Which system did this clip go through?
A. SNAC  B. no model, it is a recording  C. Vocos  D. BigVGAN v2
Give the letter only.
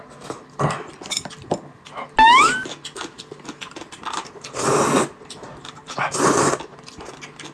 B